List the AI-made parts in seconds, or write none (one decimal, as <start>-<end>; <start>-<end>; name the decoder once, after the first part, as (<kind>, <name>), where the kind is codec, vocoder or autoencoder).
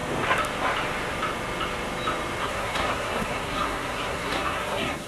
2.4-5.1 (codec, SNAC)